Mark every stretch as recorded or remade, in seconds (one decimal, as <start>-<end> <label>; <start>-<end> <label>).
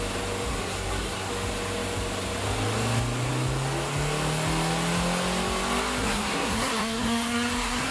0.0-0.5 recorded; 0.5-1.3 remade; 1.3-6.0 recorded; 6.0-7.9 remade